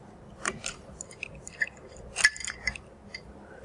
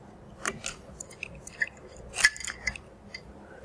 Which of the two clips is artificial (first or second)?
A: first